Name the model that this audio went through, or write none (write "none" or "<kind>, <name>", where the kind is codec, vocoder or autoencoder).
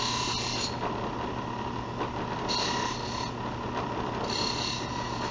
none